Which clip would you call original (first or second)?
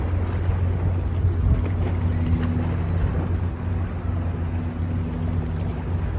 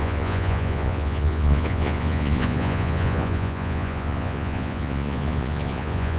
first